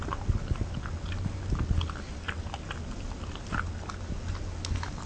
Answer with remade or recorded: recorded